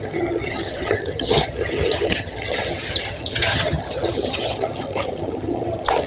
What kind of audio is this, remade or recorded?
remade